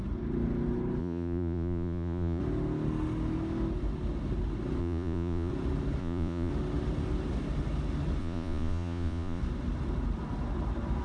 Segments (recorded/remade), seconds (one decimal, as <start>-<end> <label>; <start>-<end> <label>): 0.0-1.0 recorded; 1.0-2.4 remade; 2.4-4.8 recorded; 4.8-5.5 remade; 5.5-6.0 recorded; 6.0-6.5 remade; 6.5-8.2 recorded; 8.2-9.4 remade; 9.4-11.0 recorded